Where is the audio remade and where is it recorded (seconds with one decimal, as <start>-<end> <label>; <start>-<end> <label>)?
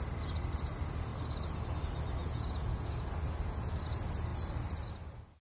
0.0-2.2 recorded; 2.2-2.9 remade; 2.9-5.4 recorded